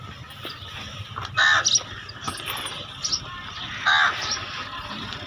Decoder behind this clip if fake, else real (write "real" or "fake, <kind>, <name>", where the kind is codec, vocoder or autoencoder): real